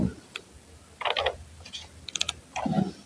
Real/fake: real